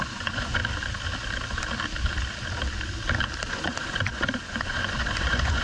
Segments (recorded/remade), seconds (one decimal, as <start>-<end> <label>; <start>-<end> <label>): 0.0-0.6 remade; 0.6-3.5 recorded; 3.5-5.6 remade